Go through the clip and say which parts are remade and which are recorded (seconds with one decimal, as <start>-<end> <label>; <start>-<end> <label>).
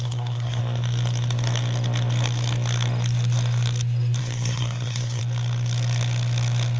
0.0-0.6 remade; 0.6-4.2 recorded; 4.2-5.2 remade; 5.2-6.8 recorded